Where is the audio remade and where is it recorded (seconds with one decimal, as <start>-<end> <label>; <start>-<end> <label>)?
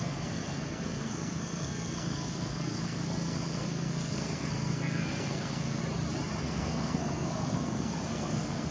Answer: 0.0-5.8 remade; 5.8-6.4 recorded; 6.4-8.7 remade